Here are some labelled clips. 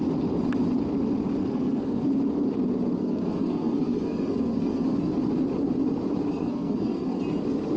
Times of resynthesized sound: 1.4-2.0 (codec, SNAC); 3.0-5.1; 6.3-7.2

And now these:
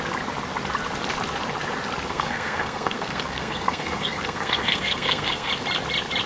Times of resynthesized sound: 2.1-5.5 (codec, SNAC)

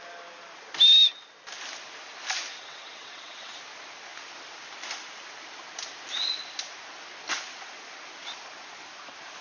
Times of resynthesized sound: 2.5-3.6 (vocoder, WaveNeXt)

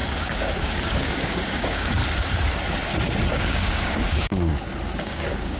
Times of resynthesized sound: 0.0-2.0 (codec, DAC); 3.3-4.5; 5.0-5.6

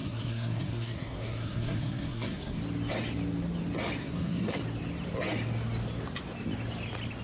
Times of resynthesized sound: 0.0-2.6 (codec, SNAC); 4.0-4.6

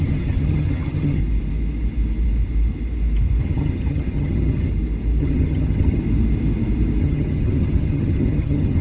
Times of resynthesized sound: 0.0-1.2 (vocoder, HiFi-GAN); 3.4-4.7; 5.2-6.0; 7.0-8.8

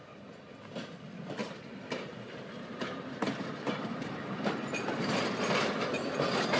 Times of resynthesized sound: 1.4-5.4 (vocoder, BigVGAN v2)